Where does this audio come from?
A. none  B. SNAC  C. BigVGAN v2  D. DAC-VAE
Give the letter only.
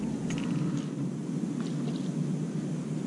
A